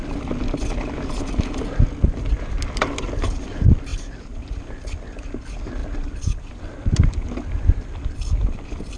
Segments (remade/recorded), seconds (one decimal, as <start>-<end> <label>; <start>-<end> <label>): 0.0-9.0 recorded